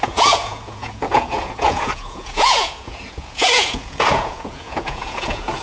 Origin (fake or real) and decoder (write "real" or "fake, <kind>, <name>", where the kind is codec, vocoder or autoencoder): fake, vocoder, Vocos